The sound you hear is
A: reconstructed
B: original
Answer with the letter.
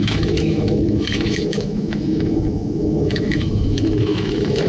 A